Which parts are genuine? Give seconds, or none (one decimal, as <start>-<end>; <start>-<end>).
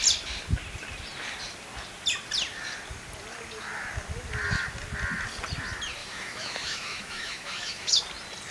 0.0-6.0; 8.0-8.5